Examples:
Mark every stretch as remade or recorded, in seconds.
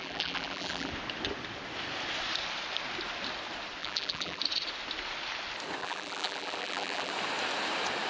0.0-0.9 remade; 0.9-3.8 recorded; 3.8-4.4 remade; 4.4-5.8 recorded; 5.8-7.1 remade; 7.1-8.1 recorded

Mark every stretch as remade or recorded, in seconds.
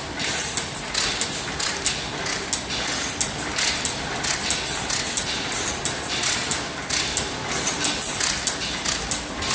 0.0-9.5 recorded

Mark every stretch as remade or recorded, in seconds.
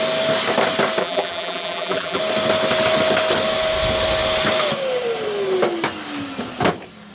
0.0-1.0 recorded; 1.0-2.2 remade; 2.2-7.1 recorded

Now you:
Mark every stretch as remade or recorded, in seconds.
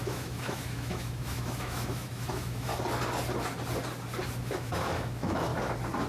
0.0-2.7 remade; 2.7-4.4 recorded; 4.4-5.5 remade; 5.5-6.1 recorded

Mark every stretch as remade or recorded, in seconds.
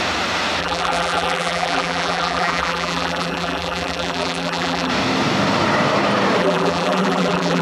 0.0-0.6 recorded; 0.6-4.9 remade; 4.9-6.4 recorded; 6.4-7.6 remade